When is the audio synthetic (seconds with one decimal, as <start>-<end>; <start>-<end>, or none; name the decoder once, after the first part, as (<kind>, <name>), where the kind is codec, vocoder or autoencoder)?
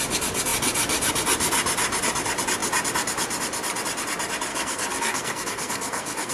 4.5-6.3 (codec, SNAC)